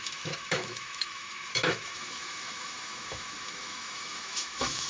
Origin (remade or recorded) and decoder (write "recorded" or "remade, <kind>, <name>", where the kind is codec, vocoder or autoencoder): remade, autoencoder, DAC-VAE